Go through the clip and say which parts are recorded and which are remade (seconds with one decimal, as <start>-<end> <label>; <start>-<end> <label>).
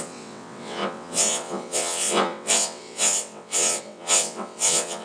0.0-5.0 remade